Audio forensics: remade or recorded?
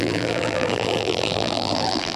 remade